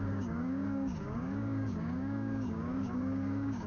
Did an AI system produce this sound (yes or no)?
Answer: yes